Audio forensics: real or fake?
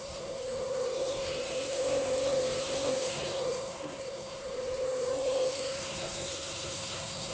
fake